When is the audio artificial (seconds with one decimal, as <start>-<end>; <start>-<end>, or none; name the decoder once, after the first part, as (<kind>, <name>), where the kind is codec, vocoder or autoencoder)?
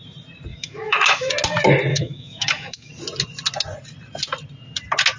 0.5-1.3 (autoencoder, DAC-VAE); 1.9-2.9